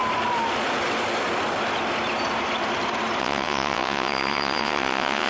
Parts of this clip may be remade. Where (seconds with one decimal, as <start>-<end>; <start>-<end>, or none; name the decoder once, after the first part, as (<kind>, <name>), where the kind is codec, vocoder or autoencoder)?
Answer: 3.2-5.3 (vocoder, WaveNeXt)